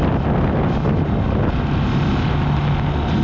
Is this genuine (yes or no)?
yes